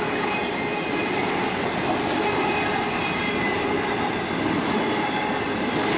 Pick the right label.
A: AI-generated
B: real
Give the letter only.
B